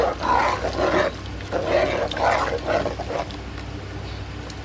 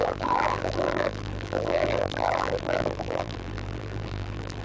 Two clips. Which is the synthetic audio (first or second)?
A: second